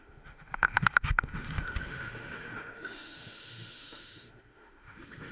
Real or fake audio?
fake